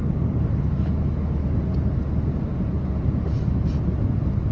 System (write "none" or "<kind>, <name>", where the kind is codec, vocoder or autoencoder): none